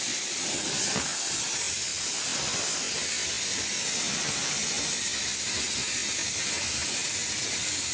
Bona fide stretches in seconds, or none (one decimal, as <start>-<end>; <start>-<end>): 0.0-7.9